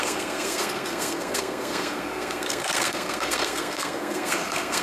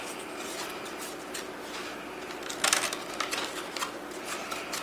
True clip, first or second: second